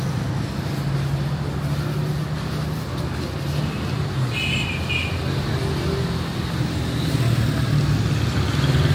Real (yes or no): yes